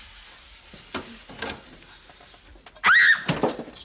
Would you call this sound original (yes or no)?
yes